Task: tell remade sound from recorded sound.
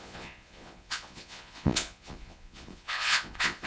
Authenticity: remade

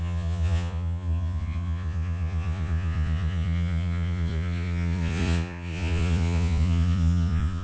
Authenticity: remade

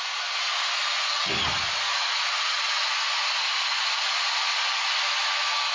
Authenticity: recorded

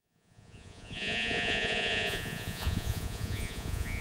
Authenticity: remade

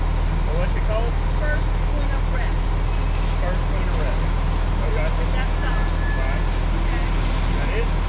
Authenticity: recorded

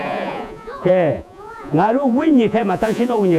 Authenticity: remade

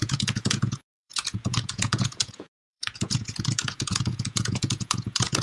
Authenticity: remade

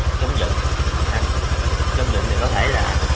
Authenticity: recorded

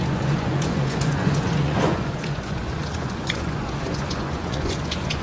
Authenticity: remade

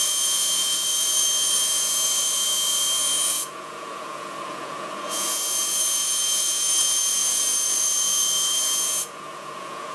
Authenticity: remade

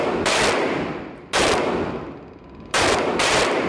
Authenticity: recorded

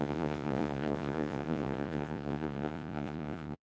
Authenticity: remade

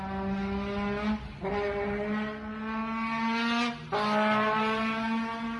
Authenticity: recorded